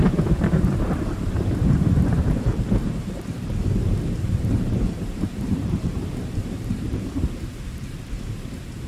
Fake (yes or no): yes